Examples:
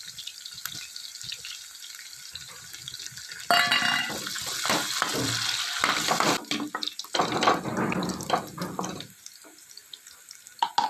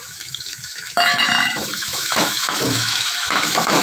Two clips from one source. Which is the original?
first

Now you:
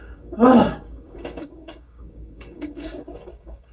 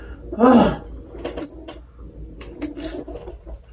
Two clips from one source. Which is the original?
second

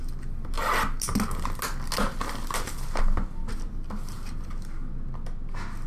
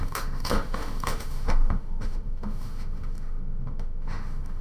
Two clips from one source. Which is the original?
first